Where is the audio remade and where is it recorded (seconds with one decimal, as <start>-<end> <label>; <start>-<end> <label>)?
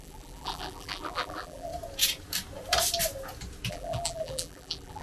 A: 0.0-1.7 remade; 1.7-3.7 recorded; 3.7-5.0 remade